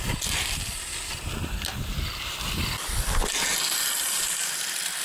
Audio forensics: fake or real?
real